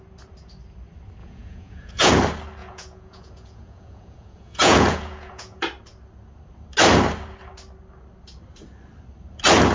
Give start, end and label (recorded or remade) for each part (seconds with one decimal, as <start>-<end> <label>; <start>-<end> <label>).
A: 0.0-1.2 recorded; 1.2-2.1 remade; 2.1-2.6 recorded; 2.6-5.6 remade; 5.6-9.7 recorded